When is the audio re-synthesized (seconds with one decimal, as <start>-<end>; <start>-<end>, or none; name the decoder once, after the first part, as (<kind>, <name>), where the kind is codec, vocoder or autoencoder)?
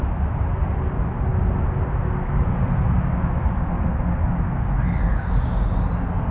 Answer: none